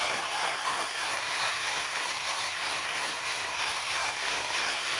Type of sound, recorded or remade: remade